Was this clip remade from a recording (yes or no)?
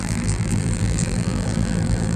yes